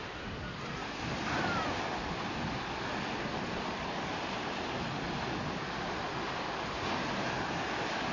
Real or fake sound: real